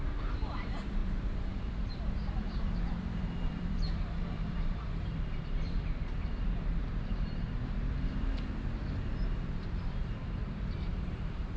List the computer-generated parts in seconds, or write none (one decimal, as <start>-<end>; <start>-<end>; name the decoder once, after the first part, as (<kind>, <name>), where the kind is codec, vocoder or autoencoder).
0.0-11.6 (vocoder, BigVGAN v2)

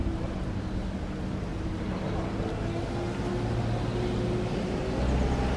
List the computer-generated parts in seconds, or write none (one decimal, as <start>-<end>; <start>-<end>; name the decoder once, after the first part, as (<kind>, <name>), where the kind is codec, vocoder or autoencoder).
0.0-0.6 (vocoder, BigVGAN v2); 1.5-2.0

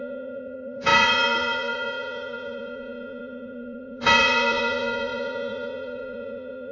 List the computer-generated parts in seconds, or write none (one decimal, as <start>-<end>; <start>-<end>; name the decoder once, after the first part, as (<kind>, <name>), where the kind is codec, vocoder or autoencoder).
0.0-6.7 (vocoder, Vocos)

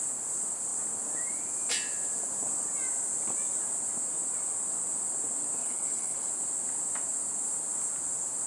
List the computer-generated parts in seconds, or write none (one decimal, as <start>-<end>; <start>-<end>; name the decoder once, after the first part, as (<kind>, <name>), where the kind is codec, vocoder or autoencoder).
5.6-6.3 (codec, HILCodec)

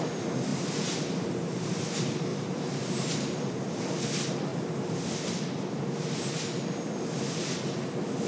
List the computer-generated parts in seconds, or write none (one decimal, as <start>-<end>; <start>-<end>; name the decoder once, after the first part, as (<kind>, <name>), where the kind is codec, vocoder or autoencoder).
0.5-1.8 (vocoder, BigVGAN v2); 2.3-3.6

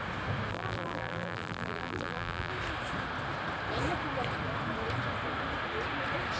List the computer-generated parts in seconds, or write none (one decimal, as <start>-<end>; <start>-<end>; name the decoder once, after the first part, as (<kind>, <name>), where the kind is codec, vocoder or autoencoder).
0.5-2.5 (vocoder, BigVGAN v2)